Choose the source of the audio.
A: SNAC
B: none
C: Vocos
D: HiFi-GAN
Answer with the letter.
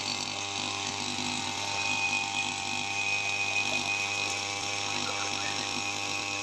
B